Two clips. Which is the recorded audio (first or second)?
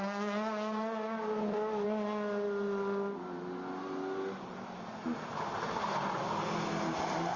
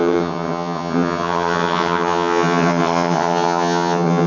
first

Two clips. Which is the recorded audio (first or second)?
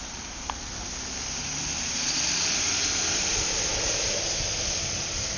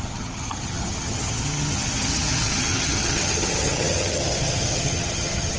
first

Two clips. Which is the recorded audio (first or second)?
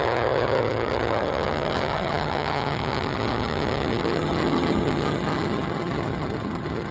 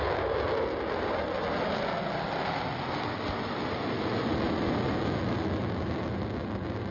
second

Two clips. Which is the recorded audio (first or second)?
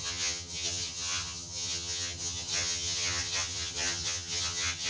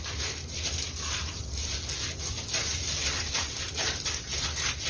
second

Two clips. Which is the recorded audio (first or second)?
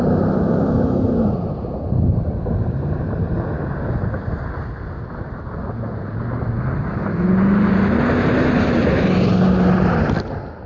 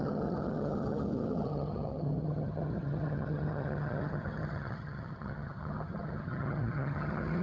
first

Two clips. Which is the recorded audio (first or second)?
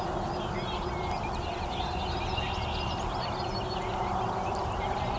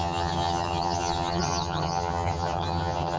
first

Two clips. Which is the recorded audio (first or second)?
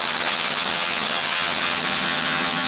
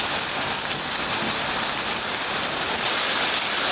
second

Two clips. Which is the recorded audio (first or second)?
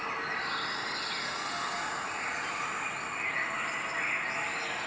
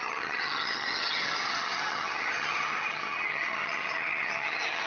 first